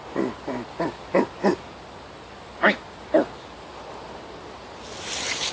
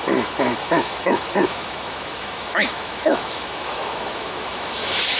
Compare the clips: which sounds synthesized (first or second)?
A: second